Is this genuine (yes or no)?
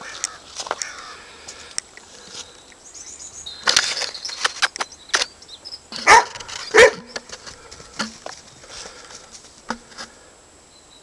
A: yes